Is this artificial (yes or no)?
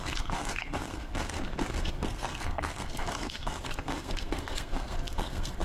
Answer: yes